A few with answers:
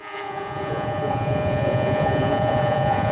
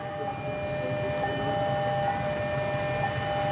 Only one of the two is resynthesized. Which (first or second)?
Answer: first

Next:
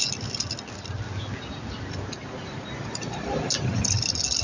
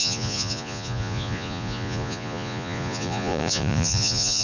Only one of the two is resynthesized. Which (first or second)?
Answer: second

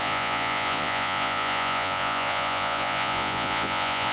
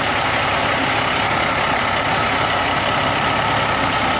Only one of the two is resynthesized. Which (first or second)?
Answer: first